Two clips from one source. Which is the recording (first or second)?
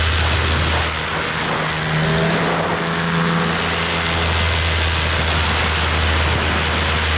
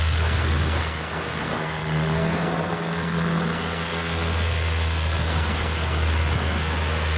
first